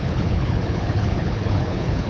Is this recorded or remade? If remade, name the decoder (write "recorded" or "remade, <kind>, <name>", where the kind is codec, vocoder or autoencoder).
remade, codec, HILCodec